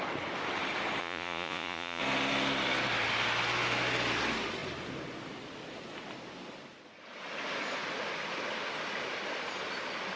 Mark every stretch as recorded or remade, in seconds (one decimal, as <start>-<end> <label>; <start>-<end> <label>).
0.0-1.0 recorded; 1.0-2.0 remade; 2.0-10.2 recorded